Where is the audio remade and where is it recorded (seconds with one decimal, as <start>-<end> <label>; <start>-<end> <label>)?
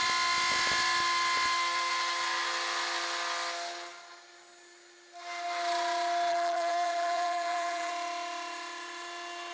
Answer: 0.0-6.3 recorded; 6.3-7.9 remade; 7.9-9.5 recorded